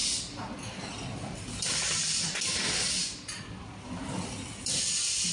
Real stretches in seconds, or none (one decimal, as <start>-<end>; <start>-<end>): 0.0-5.3